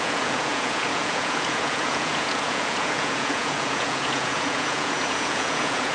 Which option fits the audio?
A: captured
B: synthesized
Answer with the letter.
B